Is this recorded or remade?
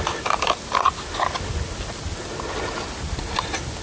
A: recorded